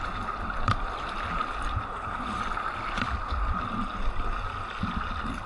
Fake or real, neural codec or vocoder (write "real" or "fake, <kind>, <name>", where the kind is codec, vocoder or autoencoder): real